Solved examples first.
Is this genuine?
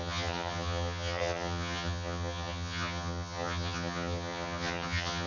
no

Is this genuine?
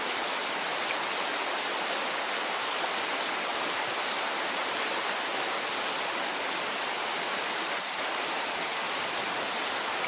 yes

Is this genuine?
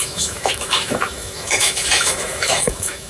no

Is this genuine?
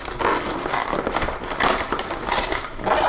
yes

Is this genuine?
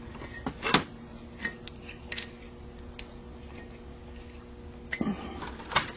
yes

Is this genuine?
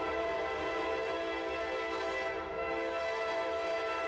yes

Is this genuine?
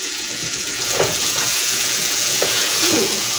no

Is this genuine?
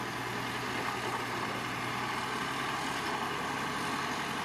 yes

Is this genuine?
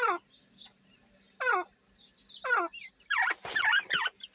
yes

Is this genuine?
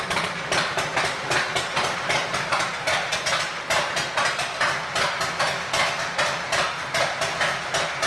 yes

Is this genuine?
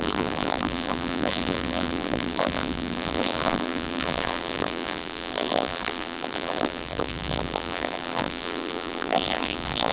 no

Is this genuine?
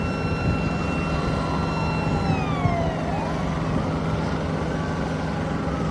yes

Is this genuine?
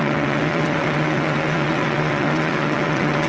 no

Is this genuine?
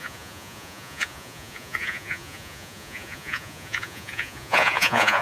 no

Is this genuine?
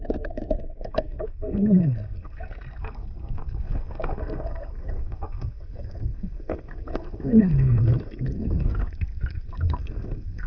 no